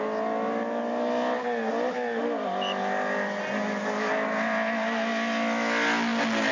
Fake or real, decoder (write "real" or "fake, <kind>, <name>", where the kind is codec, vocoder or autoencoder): real